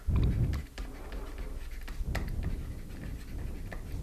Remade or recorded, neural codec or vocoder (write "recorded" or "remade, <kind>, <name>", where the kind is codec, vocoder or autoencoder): recorded